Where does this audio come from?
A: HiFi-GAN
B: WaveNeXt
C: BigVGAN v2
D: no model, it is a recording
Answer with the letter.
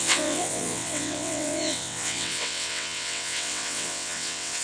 B